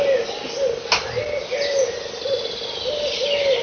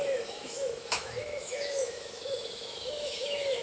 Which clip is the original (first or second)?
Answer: first